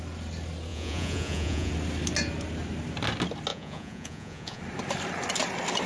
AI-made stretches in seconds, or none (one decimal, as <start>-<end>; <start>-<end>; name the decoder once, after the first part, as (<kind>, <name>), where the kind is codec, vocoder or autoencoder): 0.7-1.7 (vocoder, Vocos); 3.5-4.6